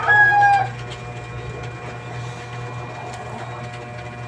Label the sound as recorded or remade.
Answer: recorded